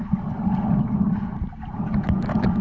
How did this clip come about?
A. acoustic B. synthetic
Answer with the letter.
A